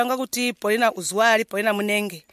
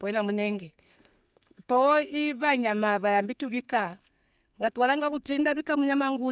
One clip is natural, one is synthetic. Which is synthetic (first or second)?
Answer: second